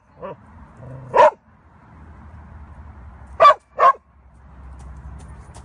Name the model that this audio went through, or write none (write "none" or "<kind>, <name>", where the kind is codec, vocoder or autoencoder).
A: none